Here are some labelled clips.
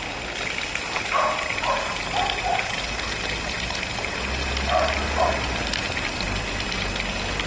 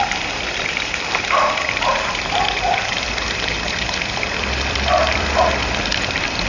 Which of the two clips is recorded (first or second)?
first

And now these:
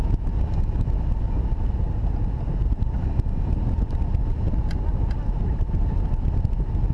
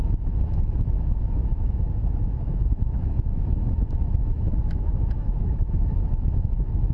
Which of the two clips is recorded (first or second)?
first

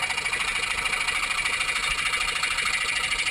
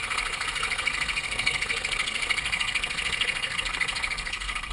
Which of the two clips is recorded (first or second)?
first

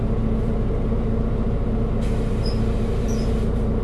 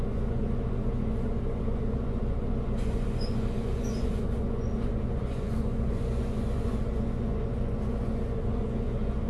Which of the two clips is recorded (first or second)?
first